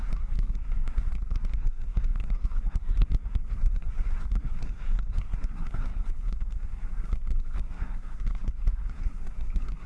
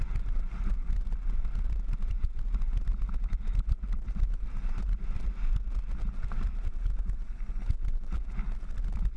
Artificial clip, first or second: first